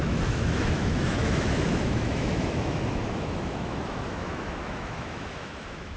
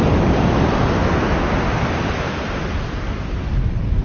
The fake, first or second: first